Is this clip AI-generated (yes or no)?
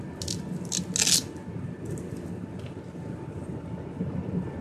no